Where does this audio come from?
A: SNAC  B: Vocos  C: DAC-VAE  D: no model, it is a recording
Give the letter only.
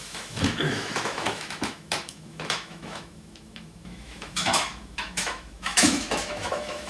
C